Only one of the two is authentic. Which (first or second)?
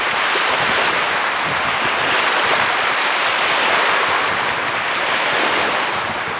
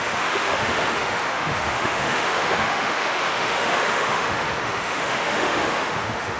first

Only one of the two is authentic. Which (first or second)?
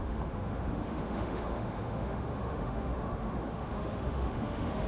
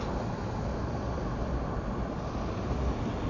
second